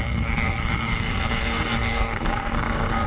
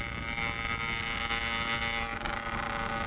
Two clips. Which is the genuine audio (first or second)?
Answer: second